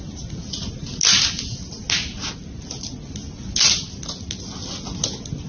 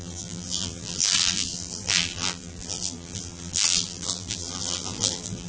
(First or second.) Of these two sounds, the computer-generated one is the second